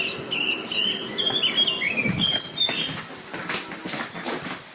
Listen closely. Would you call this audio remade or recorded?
remade